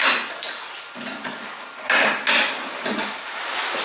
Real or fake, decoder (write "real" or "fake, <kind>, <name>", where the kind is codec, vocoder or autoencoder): real